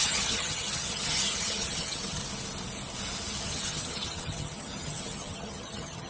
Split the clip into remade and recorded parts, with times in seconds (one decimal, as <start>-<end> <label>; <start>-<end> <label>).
0.0-2.2 remade; 2.2-3.4 recorded; 3.4-6.1 remade